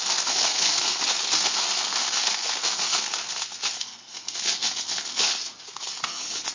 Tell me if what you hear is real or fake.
fake